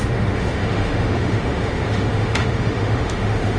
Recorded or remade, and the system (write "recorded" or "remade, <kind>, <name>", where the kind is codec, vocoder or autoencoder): remade, autoencoder, DAC-VAE